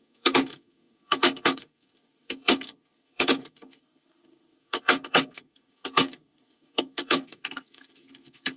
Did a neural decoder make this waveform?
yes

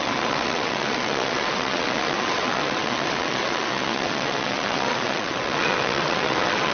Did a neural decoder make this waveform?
yes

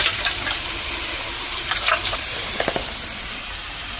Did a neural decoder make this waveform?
yes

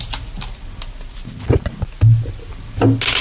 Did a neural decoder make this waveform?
no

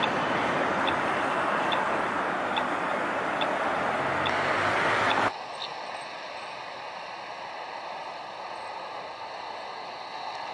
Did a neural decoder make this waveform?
no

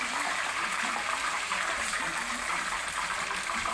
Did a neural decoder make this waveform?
yes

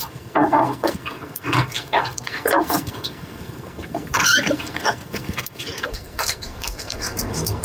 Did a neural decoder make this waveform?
yes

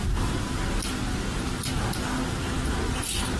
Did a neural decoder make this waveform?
no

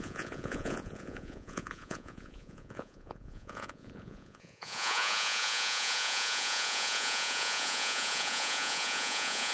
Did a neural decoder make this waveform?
yes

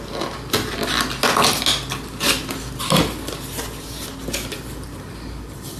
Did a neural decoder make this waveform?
no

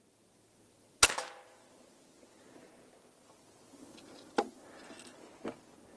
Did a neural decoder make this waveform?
no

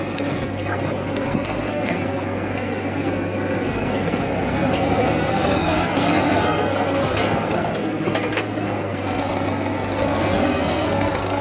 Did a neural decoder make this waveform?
yes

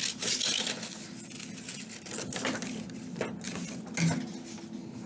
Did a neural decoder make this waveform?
no